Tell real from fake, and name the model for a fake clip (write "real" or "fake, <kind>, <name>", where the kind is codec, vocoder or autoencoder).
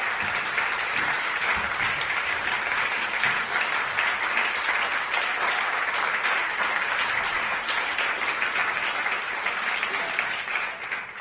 fake, vocoder, BigVGAN v2